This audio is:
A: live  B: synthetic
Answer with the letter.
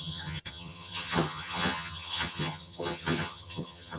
B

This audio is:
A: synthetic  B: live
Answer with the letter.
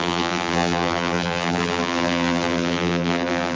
A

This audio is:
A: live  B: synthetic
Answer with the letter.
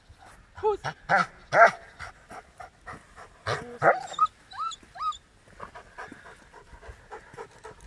A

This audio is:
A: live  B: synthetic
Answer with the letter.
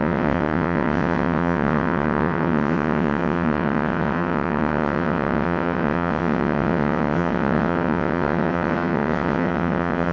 B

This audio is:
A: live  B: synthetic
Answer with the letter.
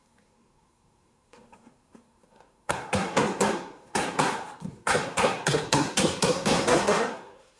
B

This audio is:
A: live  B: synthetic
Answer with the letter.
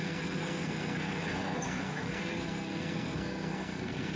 B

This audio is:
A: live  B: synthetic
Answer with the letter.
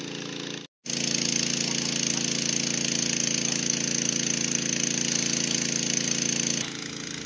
A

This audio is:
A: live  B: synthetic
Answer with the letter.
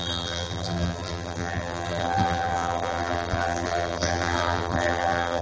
B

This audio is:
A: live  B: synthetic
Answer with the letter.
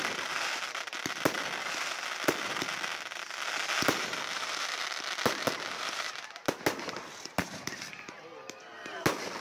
A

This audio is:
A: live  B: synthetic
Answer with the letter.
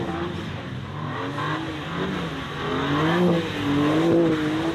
A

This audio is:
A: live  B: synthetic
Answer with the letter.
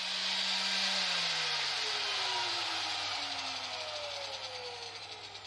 A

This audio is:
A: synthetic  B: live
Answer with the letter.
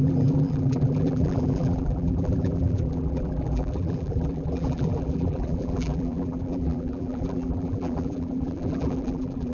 A